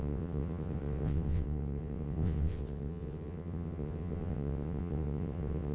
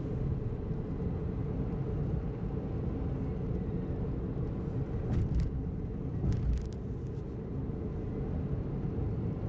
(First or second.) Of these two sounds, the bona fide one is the second